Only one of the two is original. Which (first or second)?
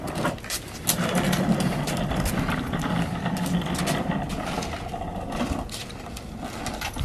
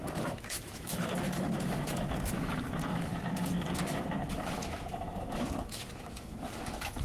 first